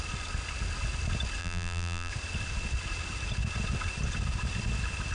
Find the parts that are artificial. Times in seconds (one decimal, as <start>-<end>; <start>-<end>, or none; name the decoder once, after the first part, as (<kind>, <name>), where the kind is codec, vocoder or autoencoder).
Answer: 1.4-2.1 (vocoder, BigVGAN v2)